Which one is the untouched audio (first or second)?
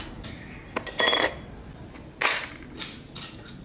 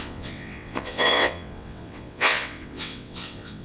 first